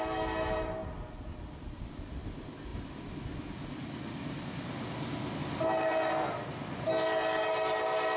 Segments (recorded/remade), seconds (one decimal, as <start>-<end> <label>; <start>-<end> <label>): 0.0-8.2 recorded